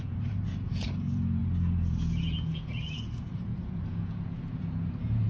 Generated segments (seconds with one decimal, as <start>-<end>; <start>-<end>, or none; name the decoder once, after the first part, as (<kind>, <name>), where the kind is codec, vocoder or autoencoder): 0.0-5.3 (vocoder, Vocos)